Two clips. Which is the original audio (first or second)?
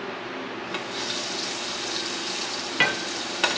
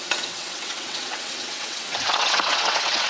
first